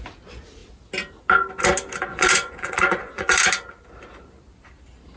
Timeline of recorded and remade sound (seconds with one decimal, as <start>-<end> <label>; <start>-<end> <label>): 0.0-2.1 recorded; 2.1-3.4 remade; 3.4-5.2 recorded